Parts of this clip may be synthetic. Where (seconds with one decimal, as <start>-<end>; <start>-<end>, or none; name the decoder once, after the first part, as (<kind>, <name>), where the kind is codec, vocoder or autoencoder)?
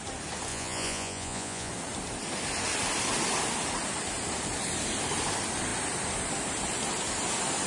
0.5-1.7 (vocoder, Vocos)